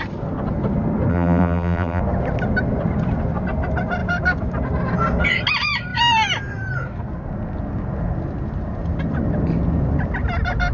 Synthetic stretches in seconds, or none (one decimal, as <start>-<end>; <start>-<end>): 1.1-2.0